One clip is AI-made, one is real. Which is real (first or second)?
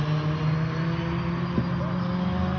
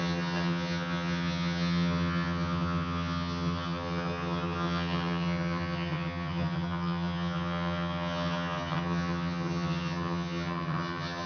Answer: first